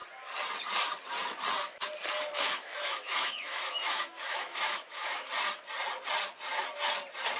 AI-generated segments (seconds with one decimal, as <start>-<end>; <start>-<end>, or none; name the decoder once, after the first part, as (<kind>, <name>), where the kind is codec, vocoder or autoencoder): 2.2-5.3 (autoencoder, DAC-VAE)